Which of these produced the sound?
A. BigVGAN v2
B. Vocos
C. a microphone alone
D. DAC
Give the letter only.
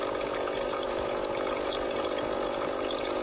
B